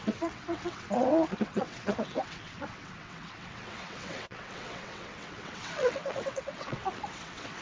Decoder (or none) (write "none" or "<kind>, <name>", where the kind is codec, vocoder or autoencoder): vocoder, WaveNeXt